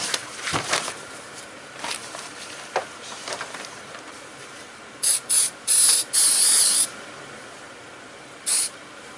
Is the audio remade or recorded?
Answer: remade